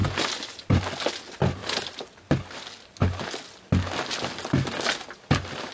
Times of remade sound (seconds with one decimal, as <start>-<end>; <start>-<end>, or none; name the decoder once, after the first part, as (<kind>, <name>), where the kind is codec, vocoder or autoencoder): 0.0-0.8 (vocoder, BigVGAN v2); 1.6-2.2